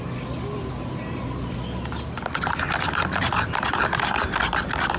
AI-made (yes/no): no